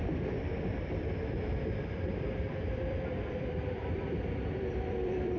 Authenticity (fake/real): fake